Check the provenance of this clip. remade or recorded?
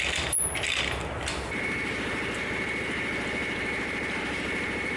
recorded